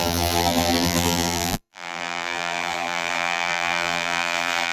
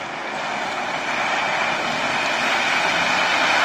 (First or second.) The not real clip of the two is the first